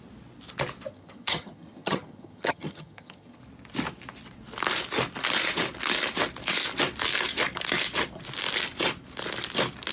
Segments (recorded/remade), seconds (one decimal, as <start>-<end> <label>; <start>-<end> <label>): 0.0-0.9 recorded; 0.9-3.4 remade; 3.4-9.9 recorded